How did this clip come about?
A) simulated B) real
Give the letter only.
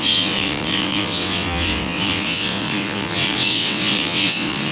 A